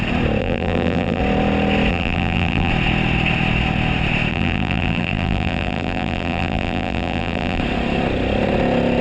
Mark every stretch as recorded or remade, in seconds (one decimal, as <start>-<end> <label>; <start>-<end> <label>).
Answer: 0.0-0.4 recorded; 0.4-1.2 remade; 1.2-1.9 recorded; 1.9-2.7 remade; 2.7-4.3 recorded; 4.3-7.6 remade; 7.6-9.0 recorded